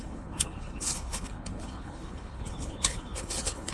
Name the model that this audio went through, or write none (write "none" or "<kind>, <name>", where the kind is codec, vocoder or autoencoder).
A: codec, HILCodec